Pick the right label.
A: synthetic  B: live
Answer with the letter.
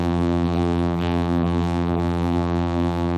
A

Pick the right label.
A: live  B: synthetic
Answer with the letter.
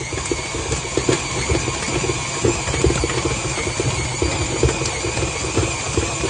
A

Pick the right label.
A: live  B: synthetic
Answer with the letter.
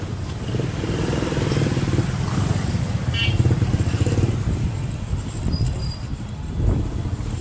A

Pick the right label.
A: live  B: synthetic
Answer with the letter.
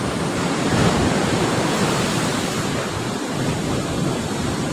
B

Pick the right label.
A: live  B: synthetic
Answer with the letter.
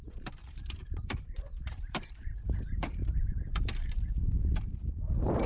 B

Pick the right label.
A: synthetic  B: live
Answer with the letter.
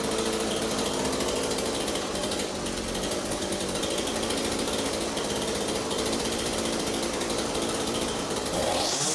A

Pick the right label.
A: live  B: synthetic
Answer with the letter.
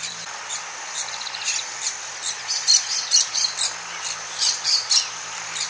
B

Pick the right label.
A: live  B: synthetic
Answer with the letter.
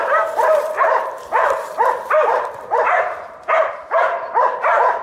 B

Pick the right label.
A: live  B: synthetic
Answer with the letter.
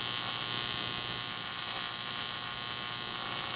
A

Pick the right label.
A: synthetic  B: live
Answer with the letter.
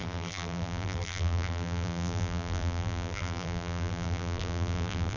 A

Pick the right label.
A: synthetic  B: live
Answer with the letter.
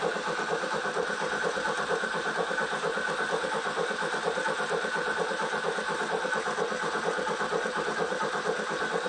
A